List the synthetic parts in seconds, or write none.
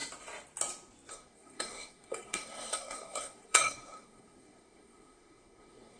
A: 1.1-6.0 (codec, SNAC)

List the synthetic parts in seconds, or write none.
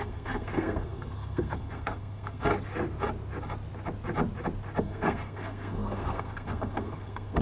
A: 0.0-2.5 (codec, SNAC); 4.8-7.4